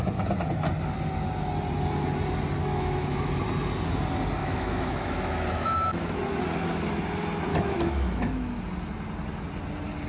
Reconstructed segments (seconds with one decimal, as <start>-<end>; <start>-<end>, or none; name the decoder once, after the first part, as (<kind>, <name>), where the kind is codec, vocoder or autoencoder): 2.6-3.4 (autoencoder, DAC-VAE); 4.4-6.4; 7.5-8.6